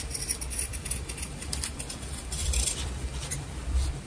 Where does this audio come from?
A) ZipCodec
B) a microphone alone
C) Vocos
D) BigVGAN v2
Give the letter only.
D